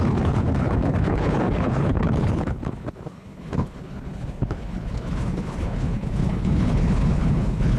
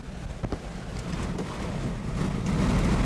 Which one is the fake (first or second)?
first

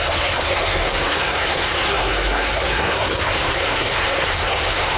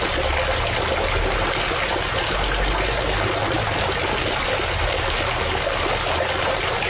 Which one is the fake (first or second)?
first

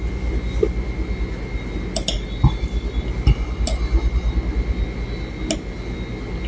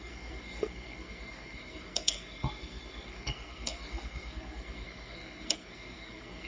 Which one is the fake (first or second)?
second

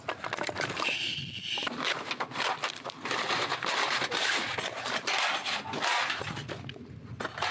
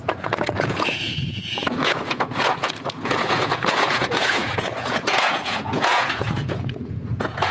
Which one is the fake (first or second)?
second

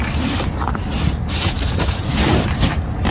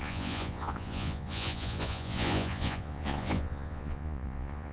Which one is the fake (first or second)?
second